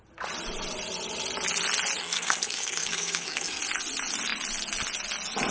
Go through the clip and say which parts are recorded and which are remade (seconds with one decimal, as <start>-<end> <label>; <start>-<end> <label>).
0.0-2.0 recorded; 2.0-3.6 remade; 3.6-5.5 recorded

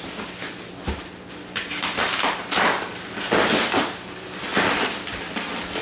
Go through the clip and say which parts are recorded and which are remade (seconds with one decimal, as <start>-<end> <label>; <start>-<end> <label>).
0.0-5.8 recorded

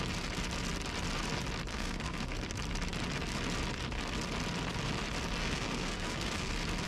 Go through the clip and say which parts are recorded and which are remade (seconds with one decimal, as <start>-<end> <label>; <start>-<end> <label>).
0.0-1.7 recorded; 1.7-2.3 remade; 2.3-5.4 recorded; 5.4-6.5 remade; 6.5-6.9 recorded

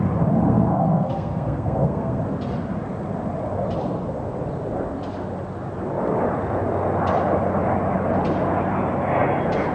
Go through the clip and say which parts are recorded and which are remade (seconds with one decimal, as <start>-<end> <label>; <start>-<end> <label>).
0.0-0.5 recorded; 0.5-2.2 remade; 2.2-9.7 recorded

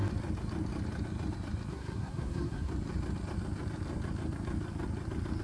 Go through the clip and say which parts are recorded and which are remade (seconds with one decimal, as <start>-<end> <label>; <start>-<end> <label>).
0.0-1.7 recorded; 1.7-2.7 remade; 2.7-5.4 recorded

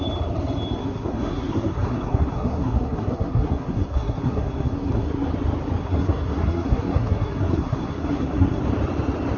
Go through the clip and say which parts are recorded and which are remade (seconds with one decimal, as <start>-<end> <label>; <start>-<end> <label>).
0.0-0.8 recorded; 0.8-5.3 remade; 5.3-5.8 recorded; 5.8-8.6 remade; 8.6-9.4 recorded

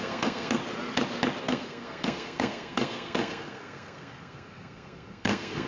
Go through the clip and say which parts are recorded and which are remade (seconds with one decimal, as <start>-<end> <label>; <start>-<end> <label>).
0.0-0.6 remade; 0.6-1.4 recorded; 1.4-5.7 remade

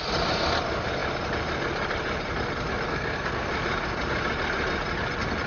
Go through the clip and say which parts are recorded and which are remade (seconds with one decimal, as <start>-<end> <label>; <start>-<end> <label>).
0.0-2.9 recorded; 2.9-3.5 remade; 3.5-5.5 recorded